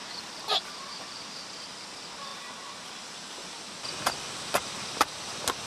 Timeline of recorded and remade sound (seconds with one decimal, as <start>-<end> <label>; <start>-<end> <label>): 0.0-1.4 remade; 1.4-2.3 recorded; 2.3-2.9 remade; 2.9-5.7 recorded